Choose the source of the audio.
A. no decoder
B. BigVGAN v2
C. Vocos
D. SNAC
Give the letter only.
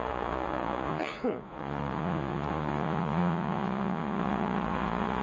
C